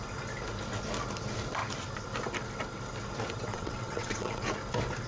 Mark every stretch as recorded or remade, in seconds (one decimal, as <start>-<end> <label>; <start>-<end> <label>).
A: 0.0-3.5 recorded; 3.5-4.5 remade; 4.5-5.1 recorded